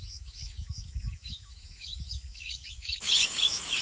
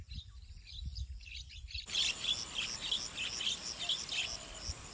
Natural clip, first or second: second